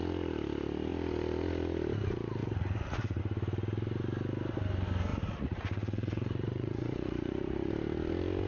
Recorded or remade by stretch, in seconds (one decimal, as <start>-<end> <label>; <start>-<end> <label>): 0.0-2.4 recorded; 2.4-3.2 remade; 3.2-5.1 recorded; 5.1-7.7 remade; 7.7-8.5 recorded